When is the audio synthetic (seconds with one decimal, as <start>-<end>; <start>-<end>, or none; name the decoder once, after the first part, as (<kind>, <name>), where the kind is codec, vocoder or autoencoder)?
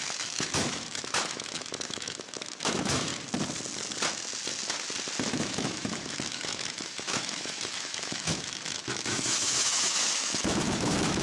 0.0-3.1 (autoencoder, DAC-VAE); 5.3-11.2